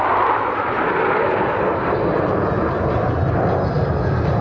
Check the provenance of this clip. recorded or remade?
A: recorded